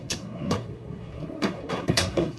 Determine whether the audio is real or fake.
fake